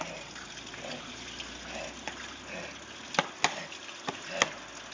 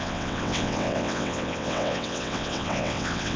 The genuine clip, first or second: first